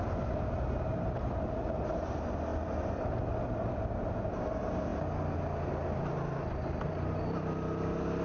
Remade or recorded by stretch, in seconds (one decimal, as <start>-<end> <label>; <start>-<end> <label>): 0.0-2.5 recorded; 2.5-3.7 remade; 3.7-8.2 recorded